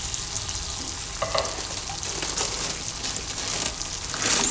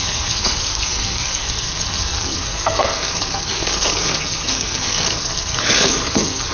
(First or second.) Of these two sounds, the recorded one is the first